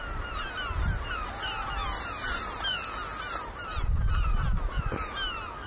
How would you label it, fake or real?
real